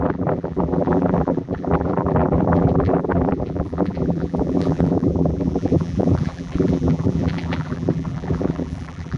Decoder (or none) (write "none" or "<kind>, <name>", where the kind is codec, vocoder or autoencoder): vocoder, BigVGAN v2